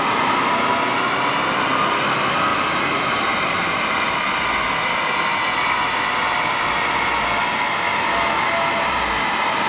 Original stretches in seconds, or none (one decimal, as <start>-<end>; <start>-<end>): 0.0-2.5; 4.4-9.7